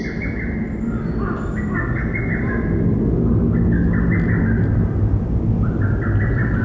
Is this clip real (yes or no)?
yes